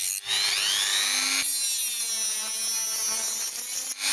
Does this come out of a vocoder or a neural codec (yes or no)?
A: no